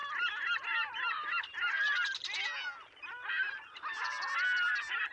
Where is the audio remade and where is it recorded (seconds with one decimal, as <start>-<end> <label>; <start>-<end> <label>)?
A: 0.0-5.1 recorded